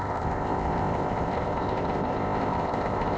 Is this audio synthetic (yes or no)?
yes